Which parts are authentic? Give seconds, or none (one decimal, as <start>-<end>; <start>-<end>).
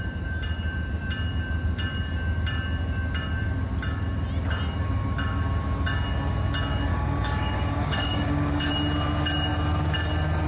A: 0.0-6.9; 8.7-10.5